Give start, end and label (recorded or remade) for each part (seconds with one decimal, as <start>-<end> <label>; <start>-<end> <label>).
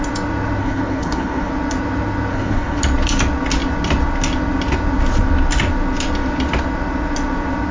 0.0-0.6 recorded; 0.6-1.5 remade; 1.5-2.3 recorded; 2.3-2.8 remade; 2.8-7.7 recorded